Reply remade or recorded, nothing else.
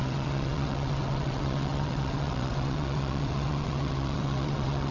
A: remade